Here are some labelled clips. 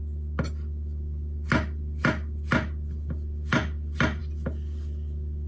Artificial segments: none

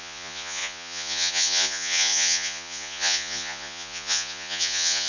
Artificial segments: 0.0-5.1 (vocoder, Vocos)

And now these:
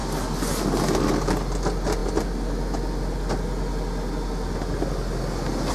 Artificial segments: none

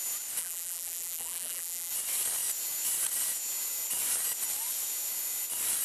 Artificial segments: 0.4-1.9 (vocoder, BigVGAN v2)

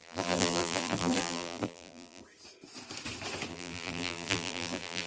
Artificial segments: 0.0-2.2 (vocoder, BigVGAN v2); 3.5-5.1

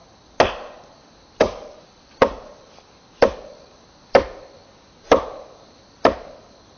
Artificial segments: none